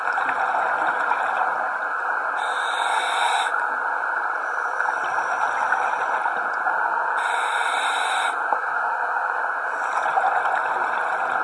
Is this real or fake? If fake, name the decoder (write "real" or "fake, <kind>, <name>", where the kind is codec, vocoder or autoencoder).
real